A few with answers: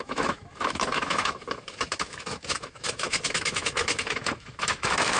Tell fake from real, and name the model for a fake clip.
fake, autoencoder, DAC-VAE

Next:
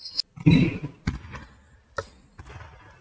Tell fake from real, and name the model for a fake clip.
real